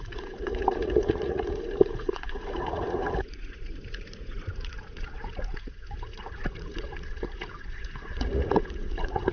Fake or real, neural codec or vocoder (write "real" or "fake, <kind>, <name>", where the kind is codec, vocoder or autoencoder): fake, vocoder, Vocos